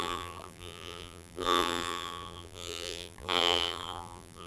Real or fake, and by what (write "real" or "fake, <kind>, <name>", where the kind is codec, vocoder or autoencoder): fake, vocoder, BigVGAN v2